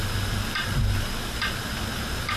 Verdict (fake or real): real